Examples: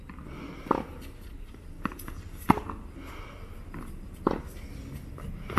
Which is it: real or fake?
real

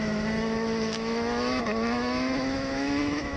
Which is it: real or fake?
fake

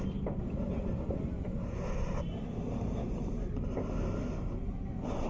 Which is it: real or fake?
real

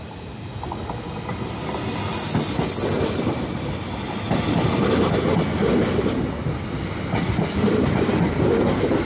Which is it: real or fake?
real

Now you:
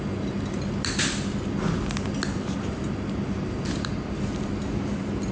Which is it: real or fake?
real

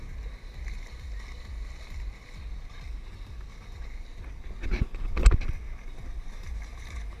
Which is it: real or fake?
real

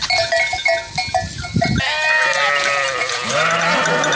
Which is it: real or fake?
real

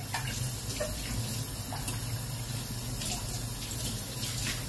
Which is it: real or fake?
real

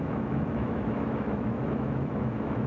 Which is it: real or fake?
fake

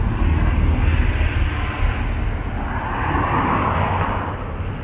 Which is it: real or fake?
real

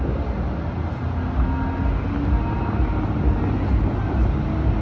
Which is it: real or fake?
real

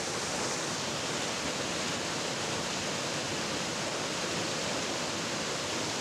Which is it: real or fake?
real